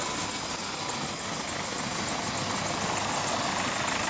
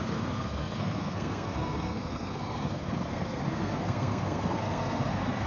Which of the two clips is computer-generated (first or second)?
second